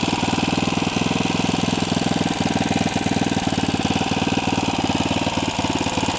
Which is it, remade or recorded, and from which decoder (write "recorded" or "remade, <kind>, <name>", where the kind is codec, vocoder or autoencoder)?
recorded